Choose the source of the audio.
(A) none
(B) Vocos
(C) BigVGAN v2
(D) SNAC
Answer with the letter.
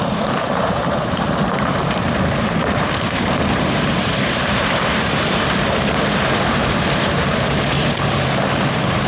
C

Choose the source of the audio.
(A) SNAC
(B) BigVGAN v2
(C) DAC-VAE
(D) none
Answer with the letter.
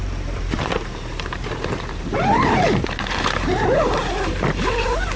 B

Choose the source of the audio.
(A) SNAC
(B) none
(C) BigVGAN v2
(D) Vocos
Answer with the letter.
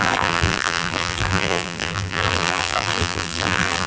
C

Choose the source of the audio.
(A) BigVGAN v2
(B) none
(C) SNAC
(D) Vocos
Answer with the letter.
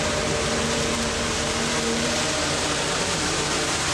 A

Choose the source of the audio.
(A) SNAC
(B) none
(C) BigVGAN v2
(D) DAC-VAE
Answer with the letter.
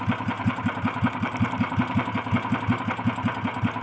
C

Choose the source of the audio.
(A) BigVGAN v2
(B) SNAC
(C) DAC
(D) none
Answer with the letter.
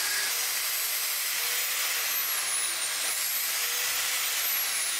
D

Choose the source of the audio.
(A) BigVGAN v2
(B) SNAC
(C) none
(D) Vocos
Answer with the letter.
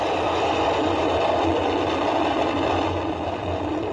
A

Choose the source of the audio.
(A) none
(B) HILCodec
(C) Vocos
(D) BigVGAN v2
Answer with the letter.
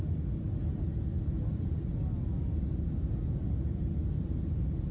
A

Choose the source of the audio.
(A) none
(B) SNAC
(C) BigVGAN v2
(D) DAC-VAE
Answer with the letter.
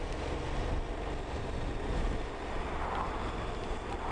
A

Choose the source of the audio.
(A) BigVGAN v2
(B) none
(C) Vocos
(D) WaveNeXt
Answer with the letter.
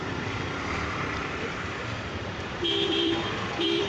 A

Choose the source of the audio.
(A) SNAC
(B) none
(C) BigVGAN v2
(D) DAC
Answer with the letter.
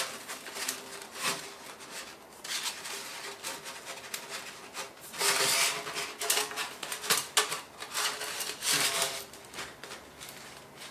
B